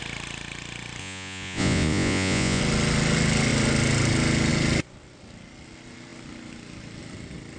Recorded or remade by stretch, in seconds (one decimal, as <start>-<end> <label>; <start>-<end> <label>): 0.0-1.0 recorded; 1.0-2.6 remade; 2.6-7.6 recorded